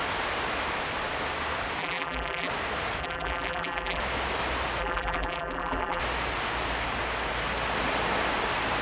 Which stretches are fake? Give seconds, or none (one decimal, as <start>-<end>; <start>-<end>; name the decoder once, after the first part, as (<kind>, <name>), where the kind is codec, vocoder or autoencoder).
1.8-2.5 (vocoder, BigVGAN v2); 3.0-4.0; 4.8-6.0